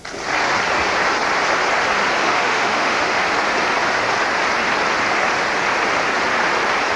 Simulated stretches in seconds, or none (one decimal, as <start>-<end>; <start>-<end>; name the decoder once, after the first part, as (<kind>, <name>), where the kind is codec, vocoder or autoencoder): 2.2-3.2 (autoencoder, DAC-VAE)